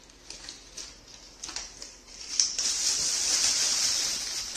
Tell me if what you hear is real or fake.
real